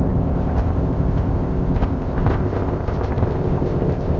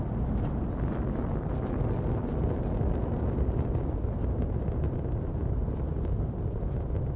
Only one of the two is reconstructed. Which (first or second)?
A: first